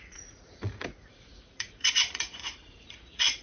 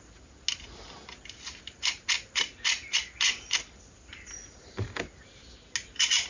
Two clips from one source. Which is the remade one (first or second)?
first